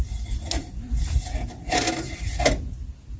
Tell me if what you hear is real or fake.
real